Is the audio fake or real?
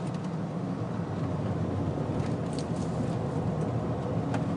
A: real